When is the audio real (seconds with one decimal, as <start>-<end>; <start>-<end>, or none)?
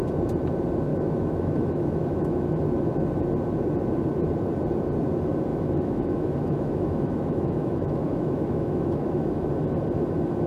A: 0.0-0.9; 2.6-5.5; 9.5-10.5